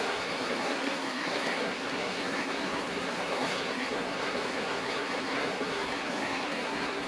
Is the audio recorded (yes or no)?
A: no